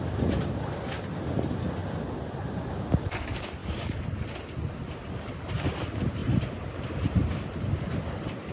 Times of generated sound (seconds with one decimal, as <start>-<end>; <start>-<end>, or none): 0.0-1.8; 2.8-3.6; 5.5-8.5